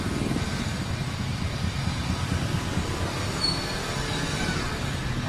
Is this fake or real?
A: real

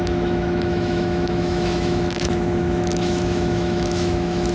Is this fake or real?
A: fake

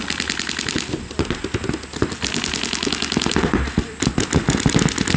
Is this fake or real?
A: real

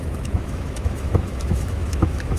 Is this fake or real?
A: fake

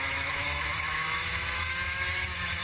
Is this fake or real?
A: fake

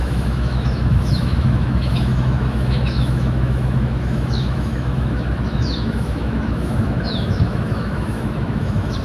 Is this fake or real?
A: fake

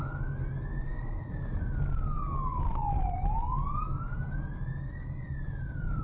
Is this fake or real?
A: real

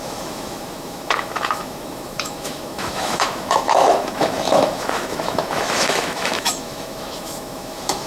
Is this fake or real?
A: fake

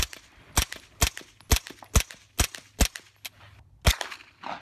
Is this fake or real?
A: real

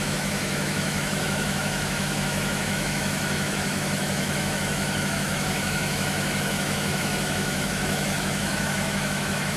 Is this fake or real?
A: fake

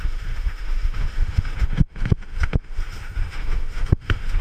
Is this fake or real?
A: fake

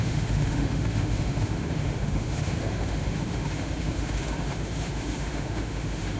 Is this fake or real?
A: fake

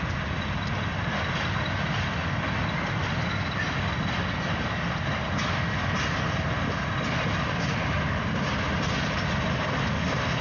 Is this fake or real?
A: real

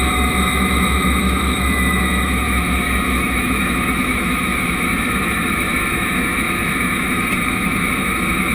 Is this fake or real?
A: fake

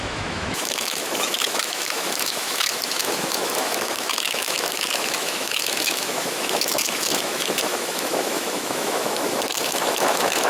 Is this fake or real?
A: fake